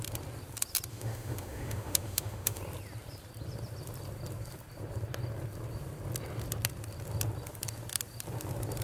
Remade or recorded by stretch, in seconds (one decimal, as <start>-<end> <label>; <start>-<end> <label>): 0.0-0.9 recorded; 0.9-2.6 remade; 2.6-8.8 recorded